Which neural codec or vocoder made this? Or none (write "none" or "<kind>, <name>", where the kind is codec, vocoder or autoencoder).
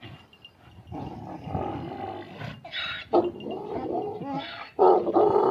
none